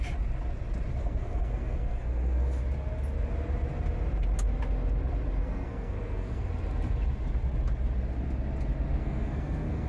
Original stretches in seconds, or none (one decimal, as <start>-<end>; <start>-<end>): 0.0-1.0; 2.6-5.4; 6.5-9.0